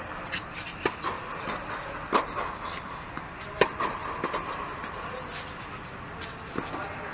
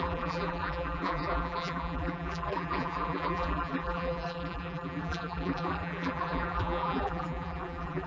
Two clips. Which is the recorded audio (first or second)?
first